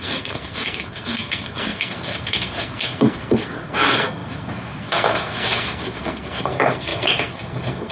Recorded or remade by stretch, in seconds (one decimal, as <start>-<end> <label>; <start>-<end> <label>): 0.0-7.9 remade